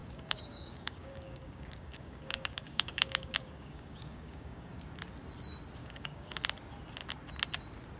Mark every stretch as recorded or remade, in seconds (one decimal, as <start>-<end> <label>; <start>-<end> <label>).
0.0-4.8 remade; 4.8-5.8 recorded; 5.8-6.4 remade; 6.4-8.0 recorded